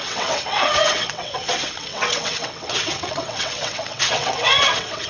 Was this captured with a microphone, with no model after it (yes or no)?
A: no